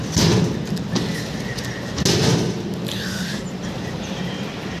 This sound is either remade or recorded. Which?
recorded